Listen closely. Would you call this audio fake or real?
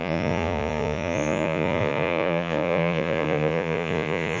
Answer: fake